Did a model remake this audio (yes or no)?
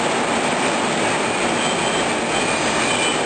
no